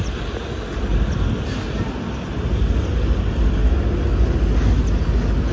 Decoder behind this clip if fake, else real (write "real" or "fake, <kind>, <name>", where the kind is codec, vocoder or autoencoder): real